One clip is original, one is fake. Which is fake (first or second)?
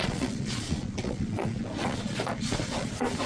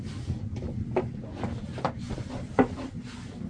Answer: first